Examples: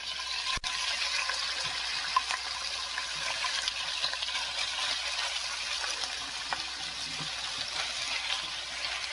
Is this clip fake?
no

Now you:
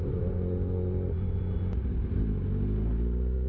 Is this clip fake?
no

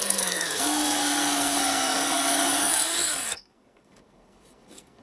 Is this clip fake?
yes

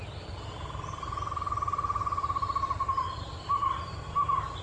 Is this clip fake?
no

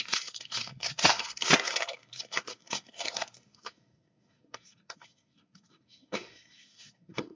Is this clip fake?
yes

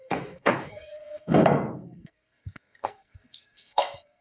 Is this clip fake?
yes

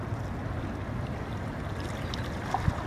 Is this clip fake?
no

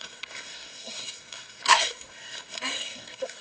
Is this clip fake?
yes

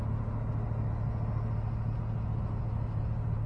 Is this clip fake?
no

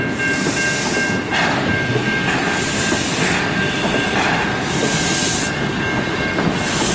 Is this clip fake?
no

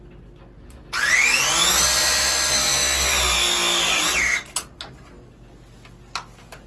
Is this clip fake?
no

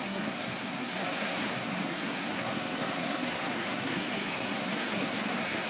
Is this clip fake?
yes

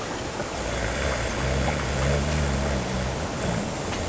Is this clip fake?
no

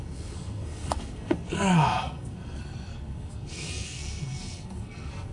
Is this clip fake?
yes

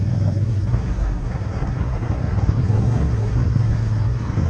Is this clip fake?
yes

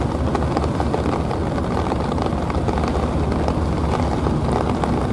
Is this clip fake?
no